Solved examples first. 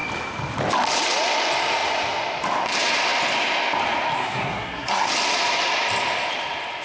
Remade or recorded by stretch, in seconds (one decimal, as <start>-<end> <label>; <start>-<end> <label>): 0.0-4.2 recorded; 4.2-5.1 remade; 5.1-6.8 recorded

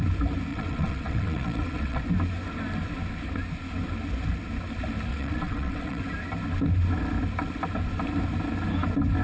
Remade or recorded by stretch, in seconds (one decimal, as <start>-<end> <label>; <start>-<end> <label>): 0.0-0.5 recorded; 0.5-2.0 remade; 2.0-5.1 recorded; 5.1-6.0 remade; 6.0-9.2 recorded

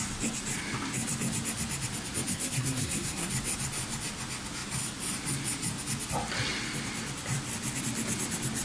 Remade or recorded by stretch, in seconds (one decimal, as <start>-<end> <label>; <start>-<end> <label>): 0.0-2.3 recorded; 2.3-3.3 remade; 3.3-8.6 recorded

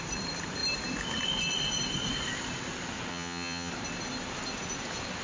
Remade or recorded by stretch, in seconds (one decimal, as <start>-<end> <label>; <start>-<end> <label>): 0.0-3.1 recorded; 3.1-3.7 remade; 3.7-5.2 recorded

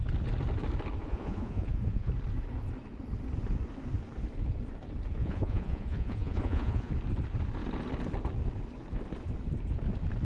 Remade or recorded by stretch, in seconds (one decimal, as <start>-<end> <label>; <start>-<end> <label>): 0.0-1.0 recorded; 1.0-2.1 remade; 2.1-5.2 recorded; 5.2-6.9 remade; 6.9-10.2 recorded